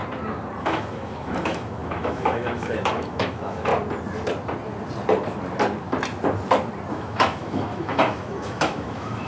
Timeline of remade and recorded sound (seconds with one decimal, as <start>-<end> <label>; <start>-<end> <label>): 0.0-0.6 recorded; 0.6-3.7 remade; 3.7-6.9 recorded; 6.9-9.3 remade

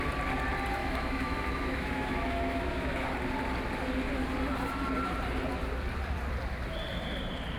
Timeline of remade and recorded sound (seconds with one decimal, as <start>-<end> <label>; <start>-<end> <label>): 0.0-0.8 recorded; 0.8-3.0 remade; 3.0-7.6 recorded

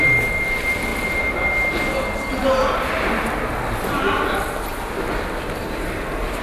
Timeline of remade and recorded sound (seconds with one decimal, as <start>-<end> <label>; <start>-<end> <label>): 0.0-6.4 recorded

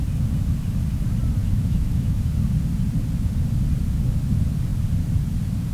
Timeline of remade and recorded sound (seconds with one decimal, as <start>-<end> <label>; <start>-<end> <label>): 0.0-1.4 recorded; 1.4-2.2 remade; 2.2-5.7 recorded